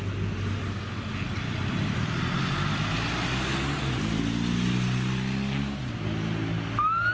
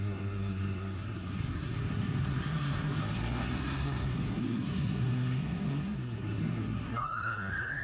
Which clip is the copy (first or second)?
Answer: second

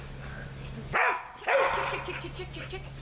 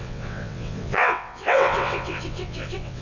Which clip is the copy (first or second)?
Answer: second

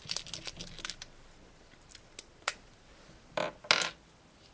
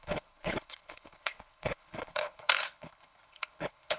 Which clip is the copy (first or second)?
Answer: second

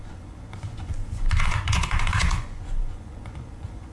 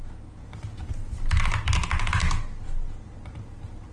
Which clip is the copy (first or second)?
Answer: first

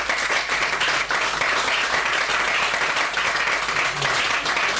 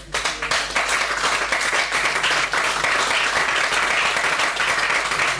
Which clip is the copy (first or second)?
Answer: first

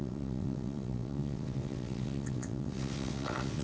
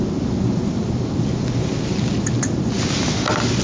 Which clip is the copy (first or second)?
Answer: first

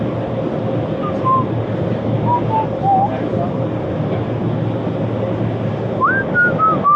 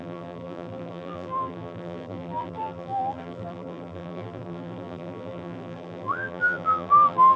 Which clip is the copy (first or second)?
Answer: second